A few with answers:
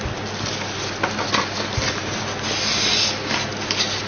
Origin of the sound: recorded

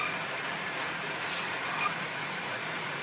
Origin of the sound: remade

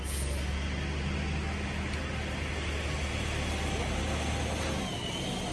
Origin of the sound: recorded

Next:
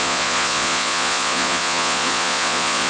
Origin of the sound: remade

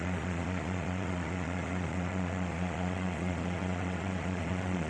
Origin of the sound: remade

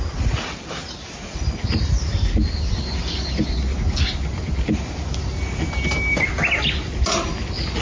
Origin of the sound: recorded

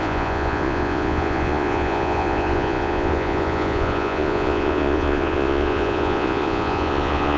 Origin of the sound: remade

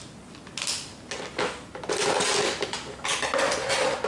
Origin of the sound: recorded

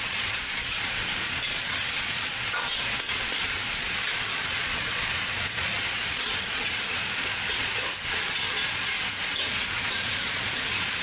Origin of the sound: remade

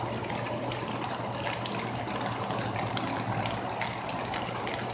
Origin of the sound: recorded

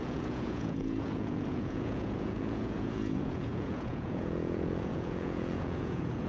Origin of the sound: remade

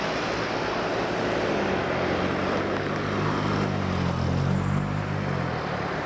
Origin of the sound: recorded